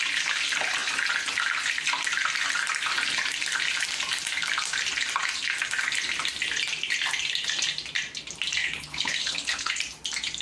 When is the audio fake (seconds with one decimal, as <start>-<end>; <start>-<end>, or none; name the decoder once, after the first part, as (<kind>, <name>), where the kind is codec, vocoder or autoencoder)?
8.6-9.8 (codec, HILCodec)